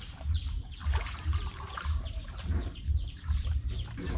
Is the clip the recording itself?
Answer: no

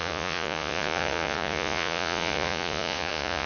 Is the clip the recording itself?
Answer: no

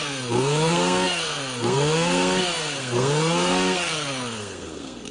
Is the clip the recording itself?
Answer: no